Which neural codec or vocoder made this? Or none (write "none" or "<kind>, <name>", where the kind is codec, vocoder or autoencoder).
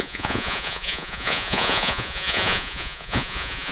vocoder, Vocos